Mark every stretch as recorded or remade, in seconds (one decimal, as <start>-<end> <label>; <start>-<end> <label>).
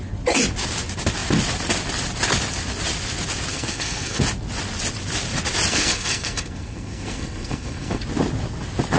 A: 0.0-3.5 recorded; 3.5-4.2 remade; 4.2-5.7 recorded; 5.7-8.0 remade; 8.0-9.0 recorded